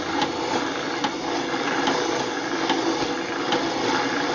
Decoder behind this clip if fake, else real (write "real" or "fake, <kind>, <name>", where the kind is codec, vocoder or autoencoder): real